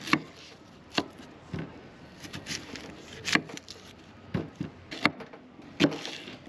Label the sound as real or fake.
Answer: real